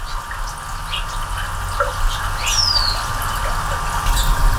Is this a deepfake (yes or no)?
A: no